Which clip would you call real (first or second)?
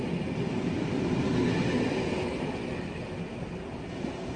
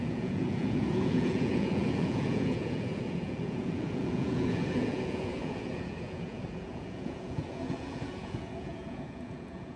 first